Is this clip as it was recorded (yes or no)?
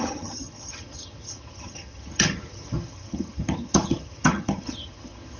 no